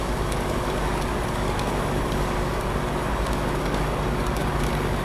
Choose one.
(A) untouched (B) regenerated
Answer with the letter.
B